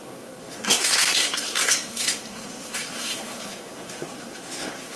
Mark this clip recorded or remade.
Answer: remade